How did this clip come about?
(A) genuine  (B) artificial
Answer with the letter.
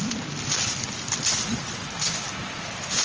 A